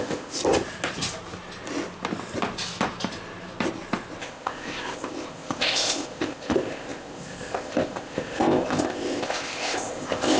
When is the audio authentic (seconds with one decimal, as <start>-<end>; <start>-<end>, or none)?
0.4-4.2